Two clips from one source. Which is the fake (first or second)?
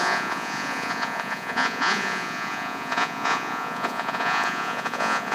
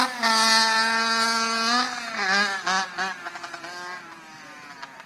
first